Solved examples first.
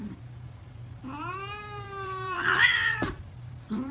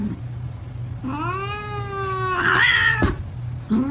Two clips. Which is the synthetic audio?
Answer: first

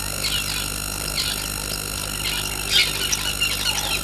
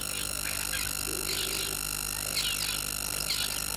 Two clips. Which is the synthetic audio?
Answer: first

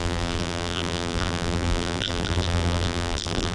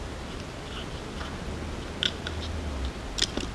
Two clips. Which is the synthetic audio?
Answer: first